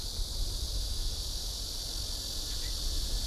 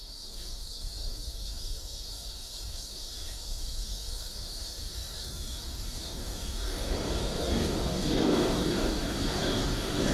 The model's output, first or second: second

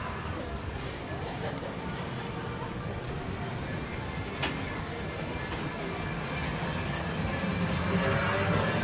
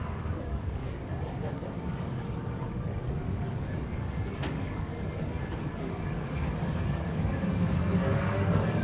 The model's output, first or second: second